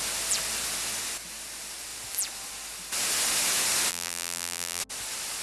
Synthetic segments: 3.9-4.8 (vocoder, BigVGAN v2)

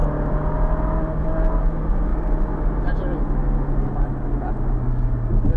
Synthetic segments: none